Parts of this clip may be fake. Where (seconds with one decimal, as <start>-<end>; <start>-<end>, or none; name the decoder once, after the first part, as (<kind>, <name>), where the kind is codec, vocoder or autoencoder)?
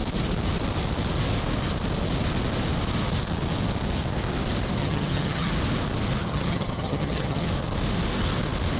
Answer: 4.8-5.5 (vocoder, HiFi-GAN); 6.2-7.5